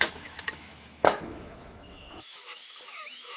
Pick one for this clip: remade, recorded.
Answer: remade